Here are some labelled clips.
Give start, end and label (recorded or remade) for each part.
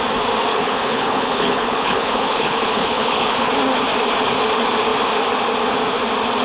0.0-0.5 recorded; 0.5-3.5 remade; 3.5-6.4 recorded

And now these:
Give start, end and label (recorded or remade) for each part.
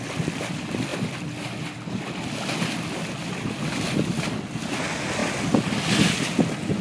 0.0-6.8 recorded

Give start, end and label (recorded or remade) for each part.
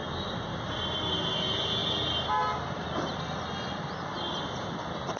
0.0-1.8 recorded; 1.8-3.0 remade; 3.0-5.2 recorded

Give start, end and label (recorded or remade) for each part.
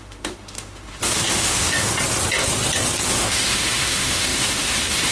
0.0-1.9 remade; 1.9-3.1 recorded; 3.1-5.1 remade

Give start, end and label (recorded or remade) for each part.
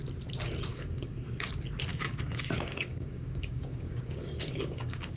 0.0-0.7 recorded; 0.7-1.5 remade; 1.5-1.9 recorded; 1.9-5.2 remade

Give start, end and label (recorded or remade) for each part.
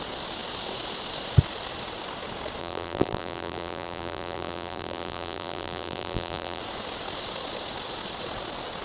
0.0-2.6 recorded; 2.6-6.6 remade; 6.6-8.8 recorded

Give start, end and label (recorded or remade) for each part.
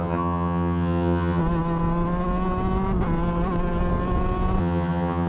0.0-1.4 remade; 1.4-4.6 recorded; 4.6-5.3 remade